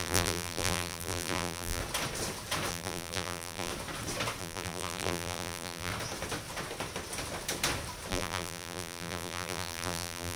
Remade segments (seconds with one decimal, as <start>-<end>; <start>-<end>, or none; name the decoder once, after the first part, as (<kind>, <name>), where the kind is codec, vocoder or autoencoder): 0.0-1.8 (vocoder, BigVGAN v2); 2.7-3.7; 4.4-5.9; 8.1-10.4